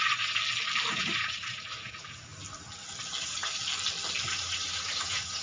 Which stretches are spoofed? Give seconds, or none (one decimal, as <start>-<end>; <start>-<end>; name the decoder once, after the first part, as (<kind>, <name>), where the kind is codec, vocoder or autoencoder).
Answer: 0.0-0.4 (vocoder, Vocos); 1.0-2.3; 3.2-3.6; 4.4-5.4